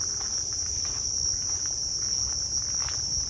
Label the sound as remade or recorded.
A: recorded